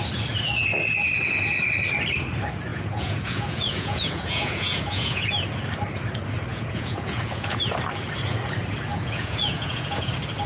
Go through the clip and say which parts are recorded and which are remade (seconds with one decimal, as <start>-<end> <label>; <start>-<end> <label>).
0.0-2.7 recorded; 2.7-5.3 remade; 5.3-6.5 recorded; 6.5-7.6 remade; 7.6-8.9 recorded; 8.9-10.1 remade; 10.1-10.5 recorded